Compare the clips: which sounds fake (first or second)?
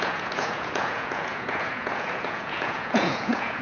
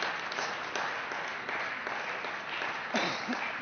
first